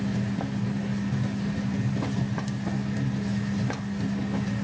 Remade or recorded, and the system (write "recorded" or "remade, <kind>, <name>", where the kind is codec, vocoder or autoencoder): recorded